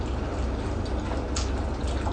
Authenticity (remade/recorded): recorded